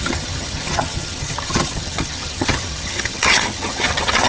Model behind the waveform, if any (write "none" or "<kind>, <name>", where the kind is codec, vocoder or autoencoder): vocoder, HiFi-GAN